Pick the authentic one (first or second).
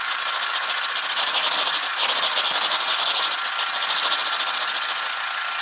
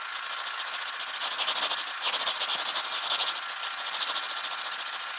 second